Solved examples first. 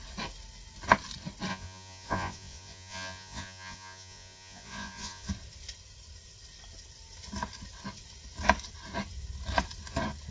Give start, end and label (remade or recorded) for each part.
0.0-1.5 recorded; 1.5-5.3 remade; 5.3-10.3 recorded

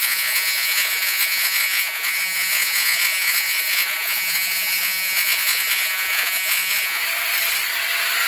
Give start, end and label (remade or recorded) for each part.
0.0-7.0 remade; 7.0-8.3 recorded

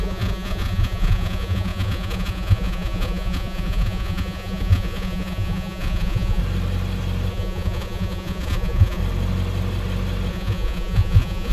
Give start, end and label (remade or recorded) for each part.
0.0-6.4 remade; 6.4-7.3 recorded; 7.3-9.0 remade; 9.0-10.3 recorded; 10.3-11.5 remade

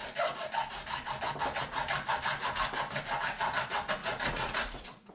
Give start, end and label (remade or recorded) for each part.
0.0-4.0 recorded; 4.0-5.1 remade

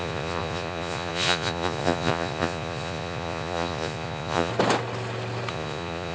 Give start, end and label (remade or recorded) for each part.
0.0-4.5 remade; 4.5-5.5 recorded; 5.5-6.1 remade

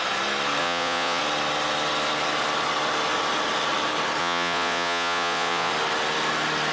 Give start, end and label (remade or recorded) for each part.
0.0-0.6 recorded; 0.6-1.2 remade; 1.2-4.2 recorded; 4.2-5.7 remade; 5.7-6.7 recorded